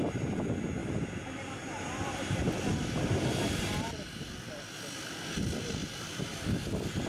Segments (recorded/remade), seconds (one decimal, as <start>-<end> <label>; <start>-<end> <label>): 0.0-0.8 recorded; 0.8-2.3 remade; 2.3-5.8 recorded; 5.8-7.1 remade